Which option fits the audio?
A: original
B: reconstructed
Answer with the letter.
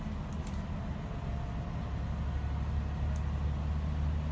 A